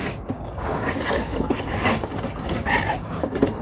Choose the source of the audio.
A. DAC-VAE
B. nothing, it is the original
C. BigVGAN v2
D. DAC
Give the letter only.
D